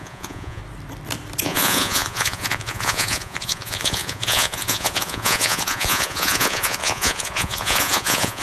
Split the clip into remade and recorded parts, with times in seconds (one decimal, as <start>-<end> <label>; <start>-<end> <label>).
0.0-0.6 remade; 0.6-1.4 recorded; 1.4-8.4 remade